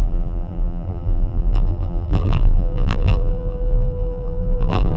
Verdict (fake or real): fake